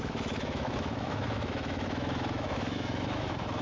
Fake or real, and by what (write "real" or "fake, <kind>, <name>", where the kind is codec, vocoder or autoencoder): fake, autoencoder, DAC-VAE